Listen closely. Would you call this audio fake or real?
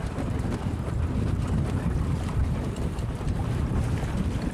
fake